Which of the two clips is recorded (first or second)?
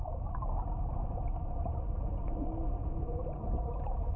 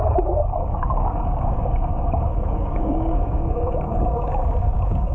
first